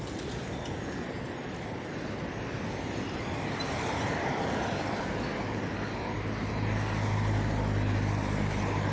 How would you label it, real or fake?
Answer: real